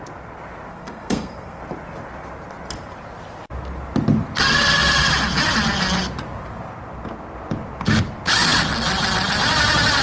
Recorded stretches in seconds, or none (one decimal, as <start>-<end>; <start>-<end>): 0.0-0.7; 1.6-10.0